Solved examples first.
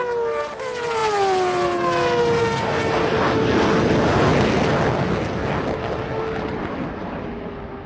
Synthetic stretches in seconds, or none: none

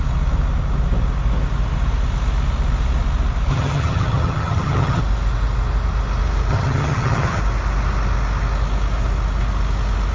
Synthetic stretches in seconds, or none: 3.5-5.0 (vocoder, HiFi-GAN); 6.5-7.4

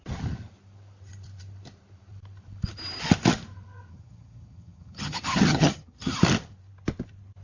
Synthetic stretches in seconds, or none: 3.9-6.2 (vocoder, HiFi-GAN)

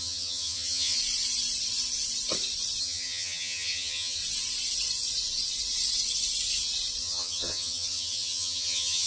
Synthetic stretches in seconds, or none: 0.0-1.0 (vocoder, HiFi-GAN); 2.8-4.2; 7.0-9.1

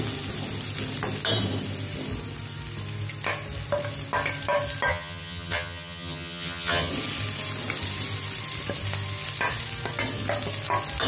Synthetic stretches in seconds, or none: 4.9-6.9 (vocoder, HiFi-GAN)

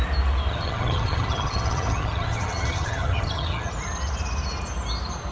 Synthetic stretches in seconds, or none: 0.5-3.7 (vocoder, HiFi-GAN)